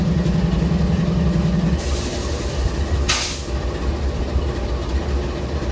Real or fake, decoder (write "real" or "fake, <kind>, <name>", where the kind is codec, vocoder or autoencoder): real